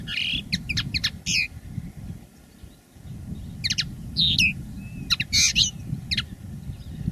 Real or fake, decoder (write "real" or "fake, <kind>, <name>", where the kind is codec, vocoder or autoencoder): real